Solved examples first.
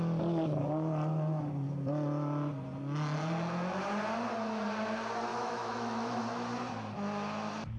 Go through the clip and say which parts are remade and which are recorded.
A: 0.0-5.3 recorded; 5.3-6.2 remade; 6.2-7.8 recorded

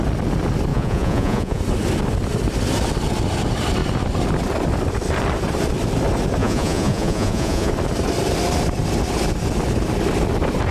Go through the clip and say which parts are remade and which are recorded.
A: 0.0-0.7 recorded; 0.7-1.6 remade; 1.6-6.4 recorded; 6.4-7.7 remade; 7.7-10.7 recorded

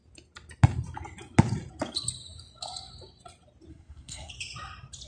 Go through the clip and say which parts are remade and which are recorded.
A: 0.0-3.7 recorded; 3.7-4.3 remade; 4.3-5.1 recorded

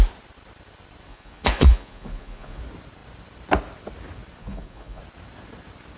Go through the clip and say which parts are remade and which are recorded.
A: 0.0-1.1 recorded; 1.1-2.6 remade; 2.6-4.4 recorded; 4.4-5.0 remade; 5.0-6.0 recorded

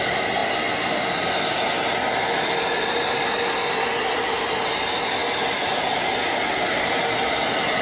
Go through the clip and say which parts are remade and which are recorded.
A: 0.0-7.8 recorded

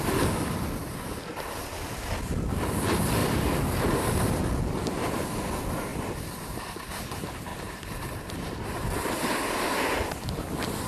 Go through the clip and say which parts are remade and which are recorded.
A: 0.0-3.2 recorded; 3.2-4.4 remade; 4.4-7.5 recorded; 7.5-9.0 remade; 9.0-10.9 recorded

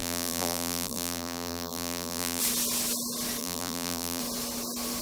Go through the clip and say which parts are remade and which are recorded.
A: 0.0-2.4 remade; 2.4-3.4 recorded; 3.4-4.2 remade; 4.2-5.0 recorded